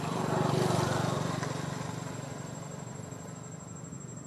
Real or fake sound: real